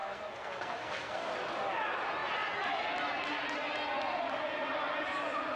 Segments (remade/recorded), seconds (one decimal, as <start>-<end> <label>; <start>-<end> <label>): 0.0-1.3 remade; 1.3-5.6 recorded